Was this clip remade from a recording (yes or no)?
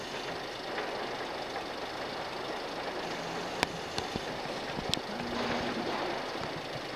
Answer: no